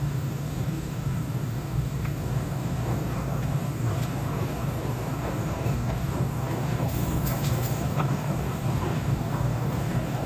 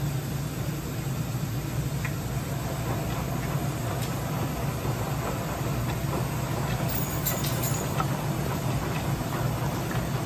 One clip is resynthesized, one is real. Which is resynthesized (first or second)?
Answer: first